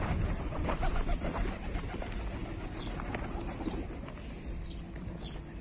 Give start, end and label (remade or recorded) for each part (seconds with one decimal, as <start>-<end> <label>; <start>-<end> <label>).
0.0-5.6 recorded